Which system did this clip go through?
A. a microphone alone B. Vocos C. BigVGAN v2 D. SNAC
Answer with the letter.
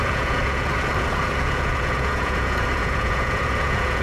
B